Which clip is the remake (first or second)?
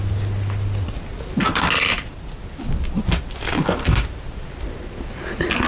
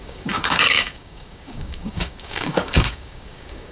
second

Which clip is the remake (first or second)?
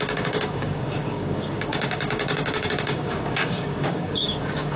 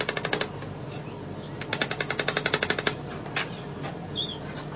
first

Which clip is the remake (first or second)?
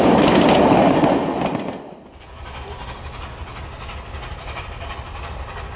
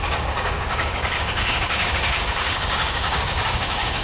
second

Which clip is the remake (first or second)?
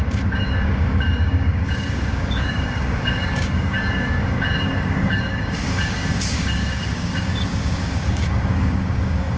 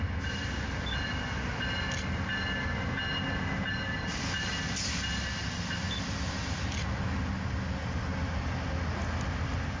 first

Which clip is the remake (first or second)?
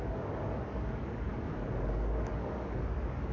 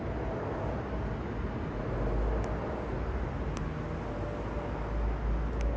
first